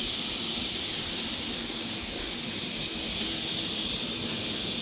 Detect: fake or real real